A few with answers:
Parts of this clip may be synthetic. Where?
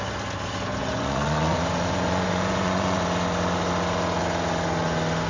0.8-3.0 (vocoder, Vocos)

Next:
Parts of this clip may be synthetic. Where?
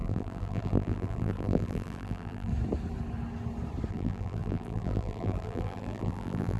0.0-2.5 (vocoder, BigVGAN v2); 3.9-6.6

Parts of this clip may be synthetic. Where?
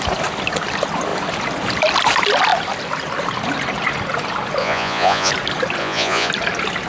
4.6-5.3 (vocoder, Vocos); 5.8-6.3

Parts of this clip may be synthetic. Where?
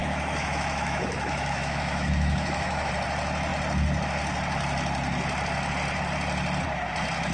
0.0-2.9 (autoencoder, DAC-VAE)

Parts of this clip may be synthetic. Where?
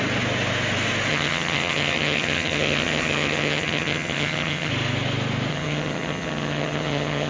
1.1-4.7 (vocoder, HiFi-GAN); 5.5-7.3